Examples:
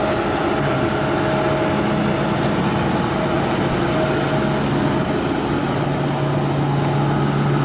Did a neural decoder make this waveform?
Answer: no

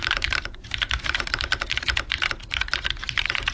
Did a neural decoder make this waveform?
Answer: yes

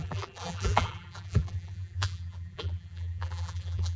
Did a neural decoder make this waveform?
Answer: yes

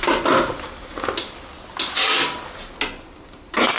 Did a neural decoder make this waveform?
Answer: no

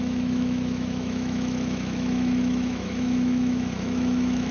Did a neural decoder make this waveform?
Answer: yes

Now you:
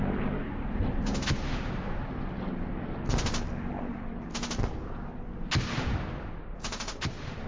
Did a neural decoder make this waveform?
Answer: no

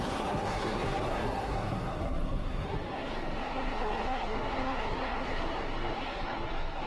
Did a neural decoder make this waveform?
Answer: yes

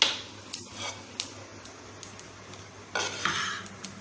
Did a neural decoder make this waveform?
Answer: no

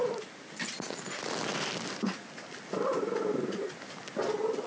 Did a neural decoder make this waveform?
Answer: no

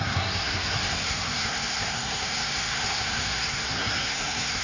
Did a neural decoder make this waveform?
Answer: yes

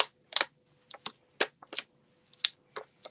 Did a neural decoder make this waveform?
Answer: no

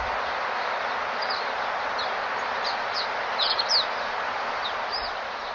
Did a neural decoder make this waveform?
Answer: no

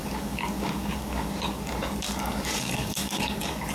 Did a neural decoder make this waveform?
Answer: yes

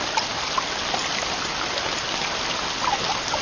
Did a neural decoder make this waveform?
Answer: no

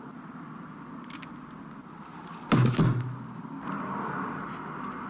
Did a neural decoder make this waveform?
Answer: no